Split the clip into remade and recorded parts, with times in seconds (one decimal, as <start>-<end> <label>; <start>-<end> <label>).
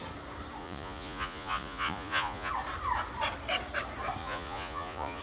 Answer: 0.0-0.6 recorded; 0.6-2.5 remade; 2.5-4.2 recorded; 4.2-5.2 remade